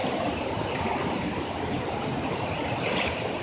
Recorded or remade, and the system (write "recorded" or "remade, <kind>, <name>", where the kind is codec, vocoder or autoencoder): recorded